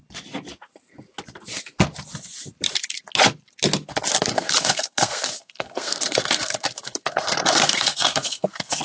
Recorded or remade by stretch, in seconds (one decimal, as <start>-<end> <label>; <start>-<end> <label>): 0.0-4.3 recorded; 4.3-8.8 remade